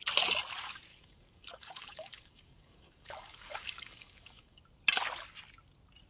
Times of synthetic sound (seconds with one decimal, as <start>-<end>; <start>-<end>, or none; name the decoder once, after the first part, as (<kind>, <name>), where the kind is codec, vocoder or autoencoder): 0.9-4.6 (codec, DAC)